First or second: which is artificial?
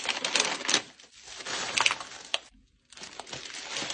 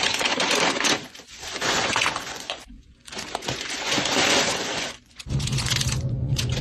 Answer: second